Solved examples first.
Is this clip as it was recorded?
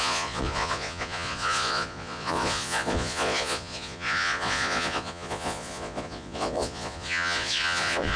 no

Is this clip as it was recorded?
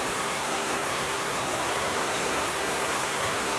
no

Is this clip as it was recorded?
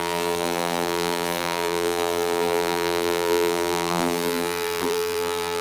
no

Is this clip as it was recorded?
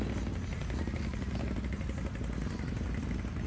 yes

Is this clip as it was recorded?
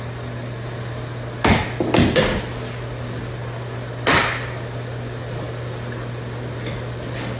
yes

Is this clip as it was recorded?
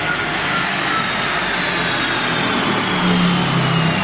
yes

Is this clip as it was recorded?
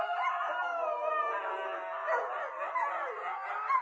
yes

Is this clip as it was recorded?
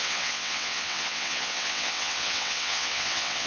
no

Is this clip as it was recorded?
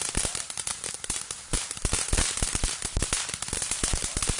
yes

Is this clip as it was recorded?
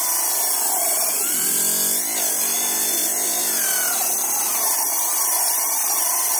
yes